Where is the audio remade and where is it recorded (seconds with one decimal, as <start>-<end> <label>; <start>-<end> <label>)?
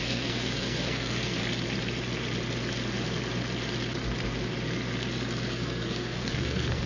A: 0.0-1.4 remade; 1.4-5.5 recorded; 5.5-6.9 remade